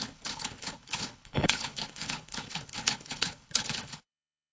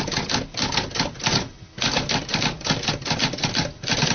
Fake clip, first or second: first